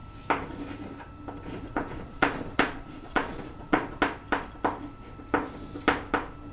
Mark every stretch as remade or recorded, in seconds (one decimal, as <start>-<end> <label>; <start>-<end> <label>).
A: 0.0-1.7 recorded; 1.7-4.0 remade; 4.0-6.5 recorded